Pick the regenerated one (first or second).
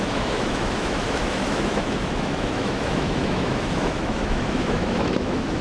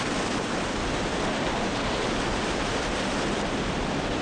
first